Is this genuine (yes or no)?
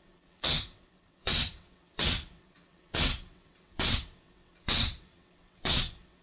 no